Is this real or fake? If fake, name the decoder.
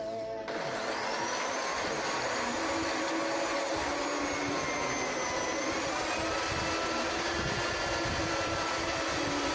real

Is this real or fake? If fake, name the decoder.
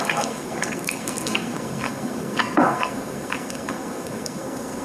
fake, codec, SNAC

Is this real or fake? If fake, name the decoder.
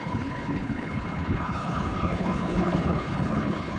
fake, codec, HILCodec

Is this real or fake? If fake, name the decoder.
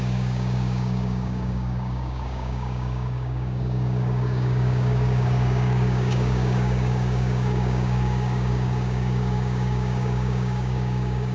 fake, codec, DAC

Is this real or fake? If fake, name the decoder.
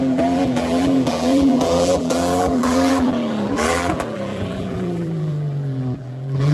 fake, vocoder, BigVGAN v2